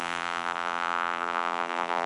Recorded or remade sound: remade